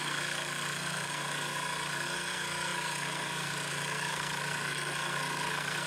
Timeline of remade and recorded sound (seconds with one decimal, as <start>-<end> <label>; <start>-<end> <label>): 0.0-5.9 remade